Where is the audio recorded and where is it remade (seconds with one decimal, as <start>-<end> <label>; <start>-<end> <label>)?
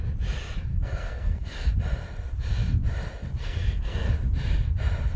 0.0-0.7 recorded; 0.7-1.7 remade; 1.7-3.4 recorded; 3.4-4.1 remade; 4.1-5.2 recorded